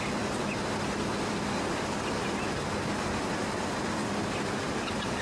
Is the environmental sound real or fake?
real